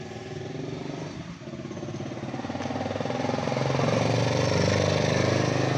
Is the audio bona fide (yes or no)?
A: yes